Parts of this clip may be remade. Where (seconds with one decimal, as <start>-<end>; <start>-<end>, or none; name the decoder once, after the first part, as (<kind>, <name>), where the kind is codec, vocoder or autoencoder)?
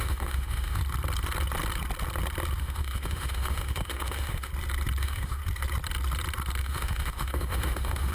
0.0-0.8 (autoencoder, DAC-VAE); 2.6-4.5; 5.0-5.4; 6.6-8.1